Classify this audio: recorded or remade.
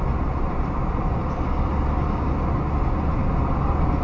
recorded